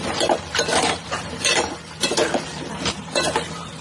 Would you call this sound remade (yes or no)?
yes